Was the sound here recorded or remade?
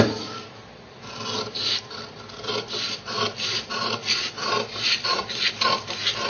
recorded